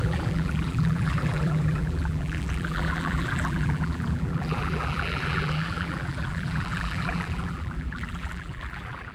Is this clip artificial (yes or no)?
yes